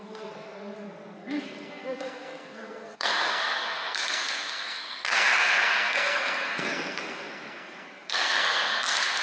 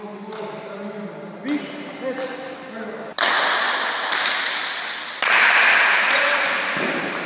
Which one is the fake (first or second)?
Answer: first